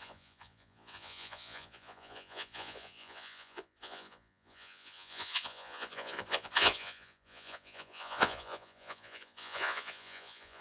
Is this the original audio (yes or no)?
no